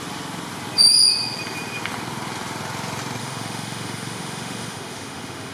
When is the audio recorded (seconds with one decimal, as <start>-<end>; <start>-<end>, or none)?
0.0-3.2